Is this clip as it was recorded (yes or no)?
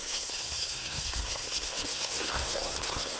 no